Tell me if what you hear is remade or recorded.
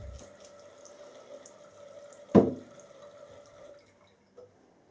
recorded